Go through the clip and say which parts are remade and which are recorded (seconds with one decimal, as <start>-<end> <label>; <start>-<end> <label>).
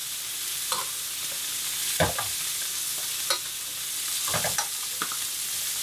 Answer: 0.0-5.8 recorded